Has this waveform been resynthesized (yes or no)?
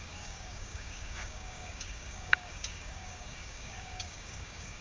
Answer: yes